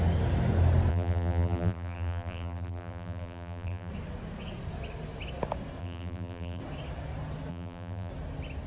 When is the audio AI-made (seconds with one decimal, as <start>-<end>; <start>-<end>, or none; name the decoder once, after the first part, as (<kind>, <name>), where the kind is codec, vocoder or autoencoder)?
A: 0.9-3.9 (vocoder, BigVGAN v2); 5.8-6.6; 7.5-8.1